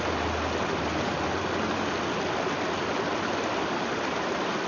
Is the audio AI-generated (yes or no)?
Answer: no